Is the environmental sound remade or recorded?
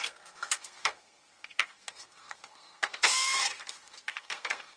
remade